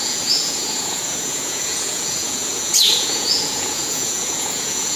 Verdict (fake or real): fake